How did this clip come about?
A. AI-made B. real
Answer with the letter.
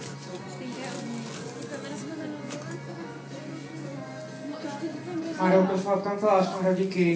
B